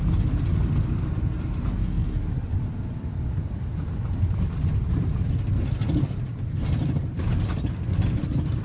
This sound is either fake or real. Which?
real